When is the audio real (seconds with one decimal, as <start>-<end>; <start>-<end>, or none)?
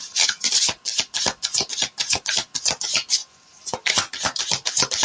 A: 0.0-3.2; 4.1-5.0